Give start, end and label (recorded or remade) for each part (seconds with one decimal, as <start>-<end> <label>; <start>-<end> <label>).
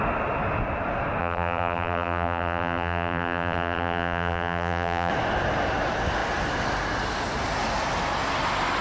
0.0-1.2 recorded; 1.2-5.1 remade; 5.1-8.8 recorded